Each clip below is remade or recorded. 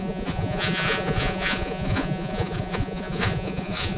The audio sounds remade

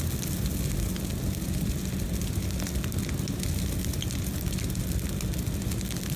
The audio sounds recorded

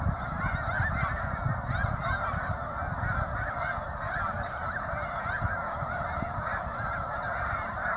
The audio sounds recorded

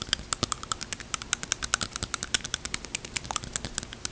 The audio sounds recorded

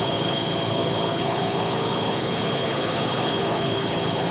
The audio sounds remade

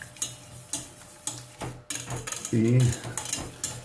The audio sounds recorded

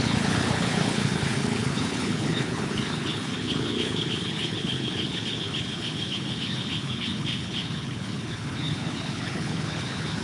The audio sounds remade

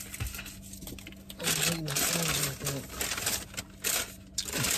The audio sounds recorded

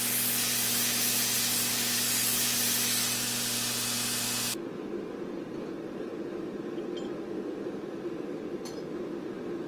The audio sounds recorded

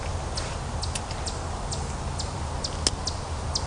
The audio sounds recorded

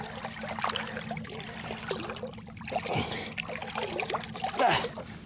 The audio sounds recorded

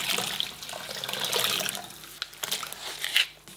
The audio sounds recorded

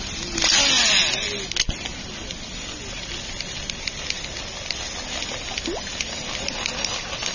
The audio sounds recorded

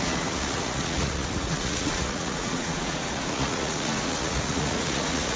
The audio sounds remade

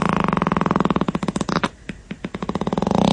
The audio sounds recorded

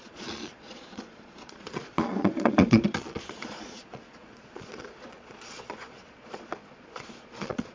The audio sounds remade